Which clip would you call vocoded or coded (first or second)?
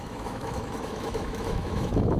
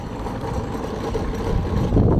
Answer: first